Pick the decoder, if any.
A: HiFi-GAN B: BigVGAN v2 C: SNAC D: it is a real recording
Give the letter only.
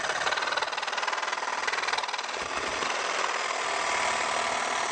D